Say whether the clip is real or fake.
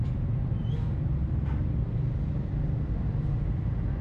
real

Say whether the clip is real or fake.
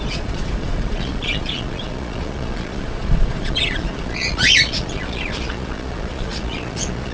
fake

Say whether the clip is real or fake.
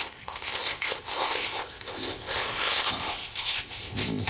fake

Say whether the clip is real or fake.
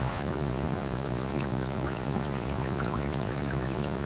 fake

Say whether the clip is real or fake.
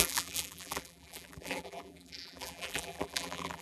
fake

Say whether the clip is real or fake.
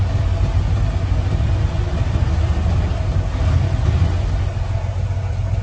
real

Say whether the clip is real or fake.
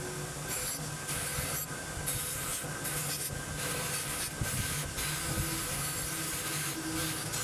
real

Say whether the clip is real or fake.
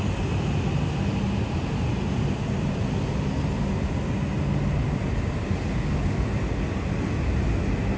real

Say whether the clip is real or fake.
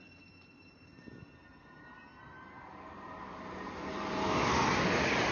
real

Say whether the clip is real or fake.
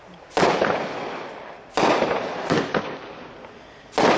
real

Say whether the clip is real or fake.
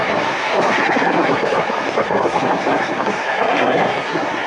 fake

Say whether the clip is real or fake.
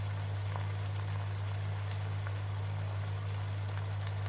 real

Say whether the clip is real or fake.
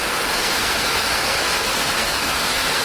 fake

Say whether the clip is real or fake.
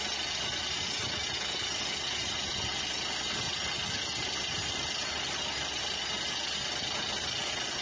real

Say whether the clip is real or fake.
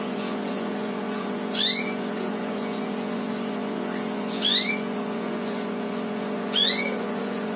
fake